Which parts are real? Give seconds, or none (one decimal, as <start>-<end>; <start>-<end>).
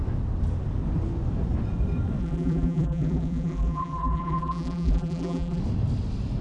0.0-2.2; 5.6-6.4